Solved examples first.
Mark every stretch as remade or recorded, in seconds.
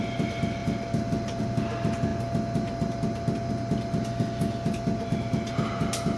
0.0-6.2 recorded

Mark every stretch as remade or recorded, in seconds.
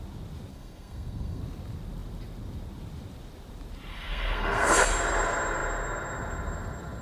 0.0-0.5 recorded; 0.5-1.4 remade; 1.4-3.9 recorded; 3.9-4.8 remade; 4.8-7.0 recorded